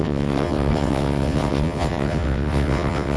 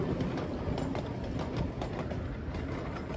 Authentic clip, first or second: second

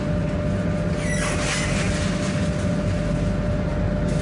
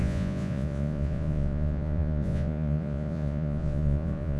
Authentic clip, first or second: first